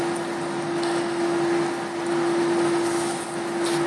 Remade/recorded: recorded